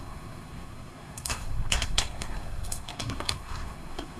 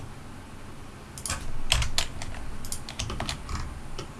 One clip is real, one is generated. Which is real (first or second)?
second